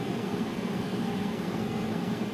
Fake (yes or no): yes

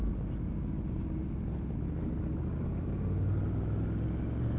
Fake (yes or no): no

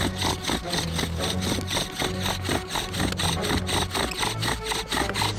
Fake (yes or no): no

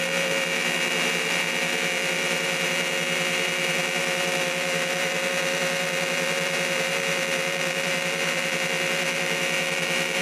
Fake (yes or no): yes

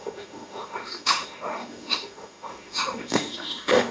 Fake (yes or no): yes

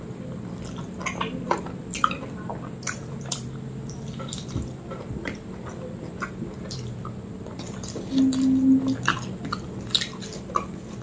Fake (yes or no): no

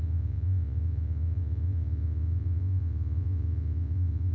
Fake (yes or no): yes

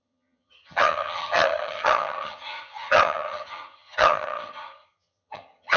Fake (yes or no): yes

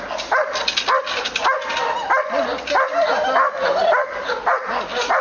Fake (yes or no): no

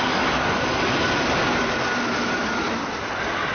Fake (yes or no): no